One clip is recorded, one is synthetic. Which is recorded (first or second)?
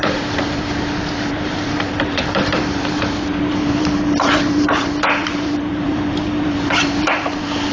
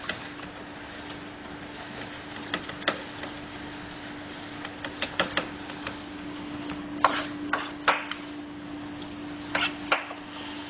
second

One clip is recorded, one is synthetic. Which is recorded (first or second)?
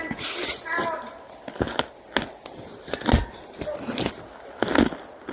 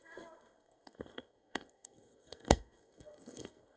first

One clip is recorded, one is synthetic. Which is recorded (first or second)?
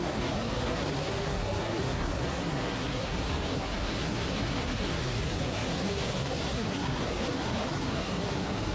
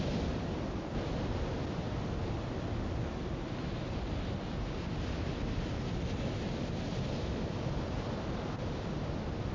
second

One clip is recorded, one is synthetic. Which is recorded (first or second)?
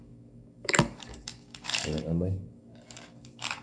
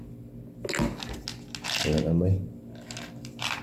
second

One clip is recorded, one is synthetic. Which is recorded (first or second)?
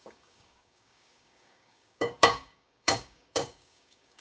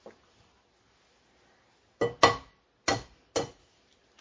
second